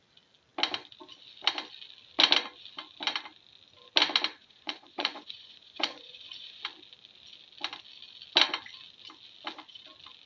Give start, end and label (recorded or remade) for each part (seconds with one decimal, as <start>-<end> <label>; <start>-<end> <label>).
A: 0.0-4.4 recorded; 4.4-6.6 remade; 6.6-10.3 recorded